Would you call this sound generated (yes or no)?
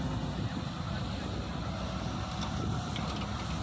no